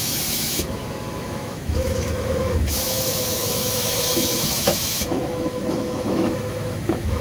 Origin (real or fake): fake